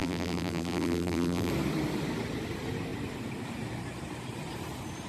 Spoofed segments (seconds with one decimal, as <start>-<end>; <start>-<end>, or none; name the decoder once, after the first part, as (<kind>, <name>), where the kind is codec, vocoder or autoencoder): 0.0-1.5 (vocoder, BigVGAN v2)